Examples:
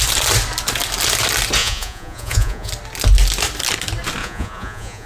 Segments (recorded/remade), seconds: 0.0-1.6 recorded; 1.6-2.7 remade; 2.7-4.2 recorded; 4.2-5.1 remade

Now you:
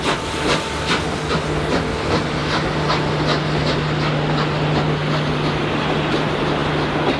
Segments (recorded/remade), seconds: 0.0-7.2 recorded

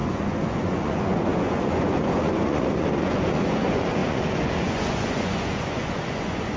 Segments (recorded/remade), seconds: 0.0-6.6 remade

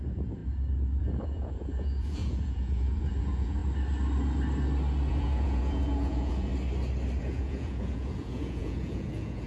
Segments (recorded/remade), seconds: 0.0-0.4 remade; 0.4-1.0 recorded; 1.0-3.6 remade; 3.6-5.1 recorded; 5.1-6.5 remade; 6.5-7.2 recorded; 7.2-9.5 remade